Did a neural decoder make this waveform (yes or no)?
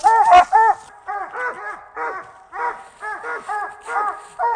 no